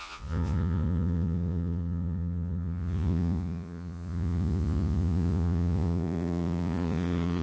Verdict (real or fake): fake